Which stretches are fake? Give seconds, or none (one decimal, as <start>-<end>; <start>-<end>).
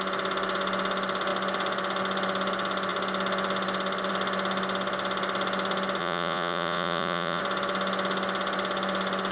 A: 6.0-7.4